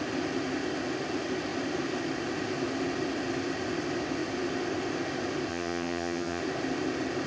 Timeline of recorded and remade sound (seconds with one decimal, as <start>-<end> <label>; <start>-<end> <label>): 0.0-5.5 recorded; 5.5-6.4 remade; 6.4-7.3 recorded